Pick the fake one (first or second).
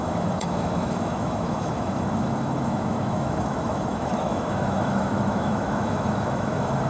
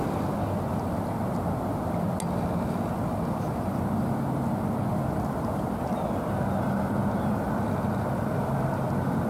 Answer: first